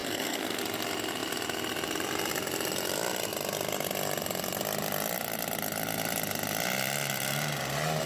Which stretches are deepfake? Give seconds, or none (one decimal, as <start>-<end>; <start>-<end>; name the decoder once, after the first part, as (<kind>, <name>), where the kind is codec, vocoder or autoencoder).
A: 0.0-0.6 (codec, SNAC)